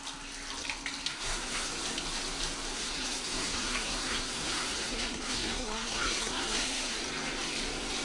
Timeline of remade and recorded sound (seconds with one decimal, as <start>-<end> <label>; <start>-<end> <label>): 0.0-1.0 recorded; 1.0-1.7 remade; 1.7-2.7 recorded; 2.7-7.0 remade; 7.0-8.0 recorded